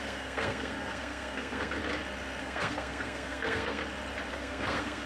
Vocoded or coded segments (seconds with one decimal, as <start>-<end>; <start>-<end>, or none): 0.0-1.8; 2.4-3.8; 4.3-5.1